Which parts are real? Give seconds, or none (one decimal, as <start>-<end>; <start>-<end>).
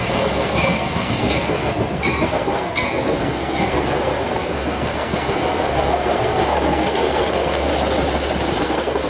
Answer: 7.7-8.6